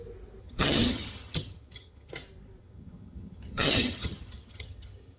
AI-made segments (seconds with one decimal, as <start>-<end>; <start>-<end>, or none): 0.4-2.1; 2.6-5.2